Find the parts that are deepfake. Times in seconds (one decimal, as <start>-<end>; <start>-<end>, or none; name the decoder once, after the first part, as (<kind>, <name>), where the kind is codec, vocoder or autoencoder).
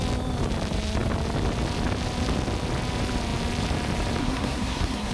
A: 4.2-5.1 (codec, SNAC)